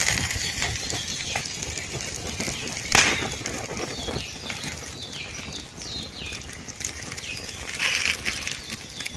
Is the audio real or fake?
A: real